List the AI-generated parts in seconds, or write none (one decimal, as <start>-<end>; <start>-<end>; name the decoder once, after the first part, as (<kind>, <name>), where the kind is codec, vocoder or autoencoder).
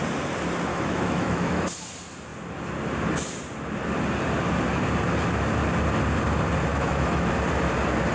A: 0.7-1.6 (autoencoder, DAC-VAE); 6.7-7.3